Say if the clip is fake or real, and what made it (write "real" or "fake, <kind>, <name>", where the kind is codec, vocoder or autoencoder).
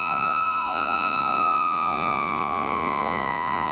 fake, vocoder, Vocos